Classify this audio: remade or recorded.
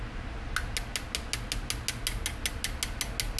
recorded